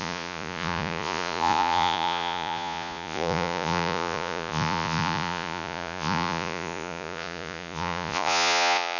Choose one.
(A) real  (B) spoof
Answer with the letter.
B